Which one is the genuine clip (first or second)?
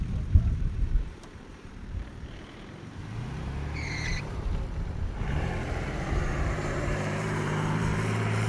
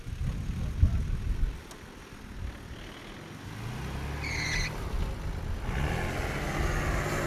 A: second